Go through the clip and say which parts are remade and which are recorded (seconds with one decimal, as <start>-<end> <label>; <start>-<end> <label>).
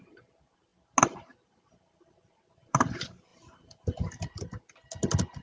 0.0-5.4 recorded